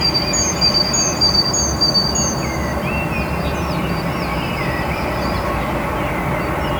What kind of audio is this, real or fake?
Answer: real